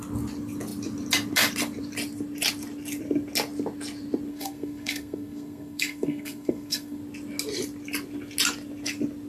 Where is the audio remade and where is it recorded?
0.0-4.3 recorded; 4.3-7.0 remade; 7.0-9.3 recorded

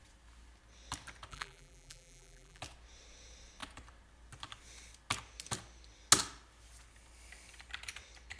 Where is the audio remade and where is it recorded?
0.0-1.3 recorded; 1.3-2.6 remade; 2.6-8.4 recorded

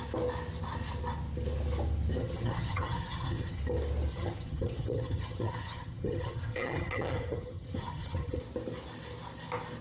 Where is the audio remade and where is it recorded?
0.0-2.2 recorded; 2.2-3.6 remade; 3.6-4.1 recorded; 4.1-8.4 remade; 8.4-9.8 recorded

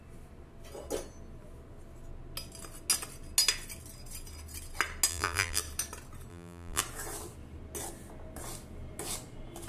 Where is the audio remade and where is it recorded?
0.0-5.1 recorded; 5.1-5.6 remade; 5.6-6.3 recorded; 6.3-6.8 remade; 6.8-9.7 recorded

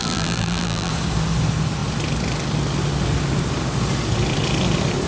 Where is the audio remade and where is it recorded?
0.0-0.9 remade; 0.9-5.1 recorded